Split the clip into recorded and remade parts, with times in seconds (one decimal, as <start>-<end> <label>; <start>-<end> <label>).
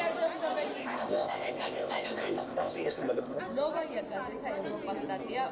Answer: 0.0-0.8 recorded; 0.8-3.4 remade; 3.4-5.5 recorded